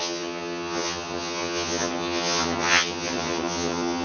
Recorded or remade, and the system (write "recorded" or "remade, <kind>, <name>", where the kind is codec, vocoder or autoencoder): remade, vocoder, HiFi-GAN